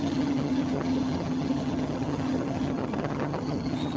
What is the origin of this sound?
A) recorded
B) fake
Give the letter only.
B